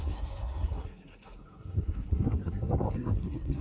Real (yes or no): no